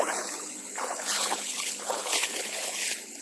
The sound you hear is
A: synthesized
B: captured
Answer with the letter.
A